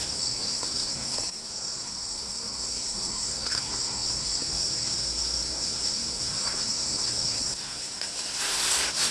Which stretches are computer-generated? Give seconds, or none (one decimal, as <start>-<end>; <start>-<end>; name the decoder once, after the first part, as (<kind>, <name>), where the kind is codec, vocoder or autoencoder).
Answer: 0.0-9.1 (codec, SNAC)